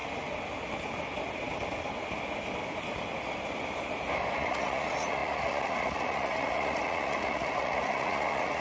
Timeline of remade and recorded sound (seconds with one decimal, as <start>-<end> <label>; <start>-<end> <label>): 0.0-4.3 recorded; 4.3-8.6 remade